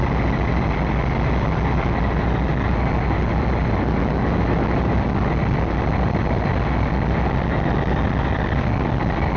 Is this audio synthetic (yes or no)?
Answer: no